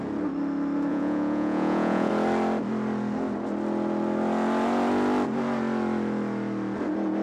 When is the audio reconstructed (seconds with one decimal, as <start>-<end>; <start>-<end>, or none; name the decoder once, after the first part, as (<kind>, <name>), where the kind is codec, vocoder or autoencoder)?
0.9-2.1 (vocoder, Vocos)

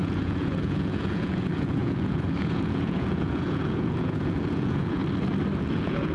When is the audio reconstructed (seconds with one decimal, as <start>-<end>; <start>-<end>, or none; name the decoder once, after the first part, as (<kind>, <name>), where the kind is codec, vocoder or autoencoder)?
0.0-5.0 (vocoder, Vocos); 5.6-6.1

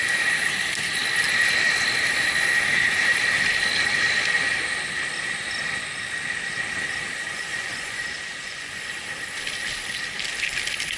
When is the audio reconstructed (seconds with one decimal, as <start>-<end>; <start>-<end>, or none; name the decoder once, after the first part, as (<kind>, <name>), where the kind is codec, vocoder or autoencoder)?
7.3-8.0 (vocoder, Vocos); 8.4-9.0

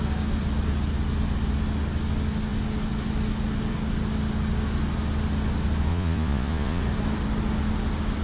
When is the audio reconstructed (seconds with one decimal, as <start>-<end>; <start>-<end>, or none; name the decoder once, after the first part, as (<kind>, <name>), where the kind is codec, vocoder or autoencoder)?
5.9-6.8 (vocoder, Vocos)